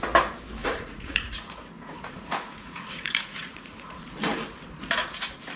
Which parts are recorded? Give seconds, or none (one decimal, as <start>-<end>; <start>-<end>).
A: 0.0-0.6; 4.0-5.6